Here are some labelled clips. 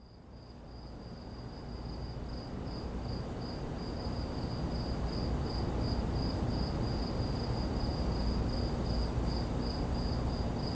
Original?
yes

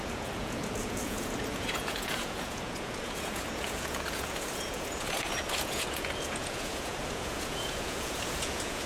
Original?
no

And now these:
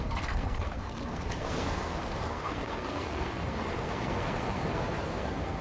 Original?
no